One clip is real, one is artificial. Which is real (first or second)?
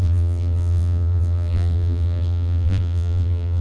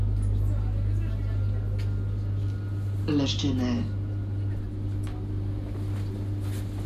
second